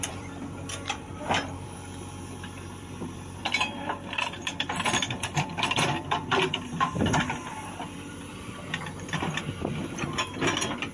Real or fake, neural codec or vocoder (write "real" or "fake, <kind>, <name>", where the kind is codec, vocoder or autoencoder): fake, vocoder, BigVGAN v2